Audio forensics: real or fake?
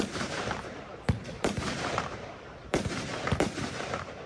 fake